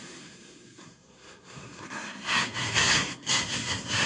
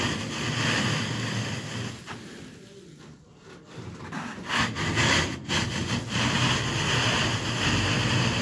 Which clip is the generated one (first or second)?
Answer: first